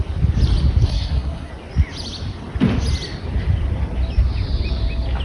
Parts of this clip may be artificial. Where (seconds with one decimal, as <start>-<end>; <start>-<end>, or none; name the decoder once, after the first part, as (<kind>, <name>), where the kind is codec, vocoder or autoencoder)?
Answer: 0.8-1.5 (codec, SNAC)